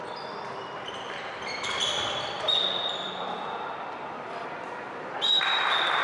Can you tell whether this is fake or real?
fake